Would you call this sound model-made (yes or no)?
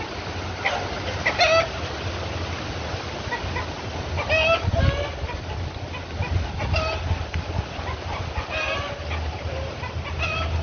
no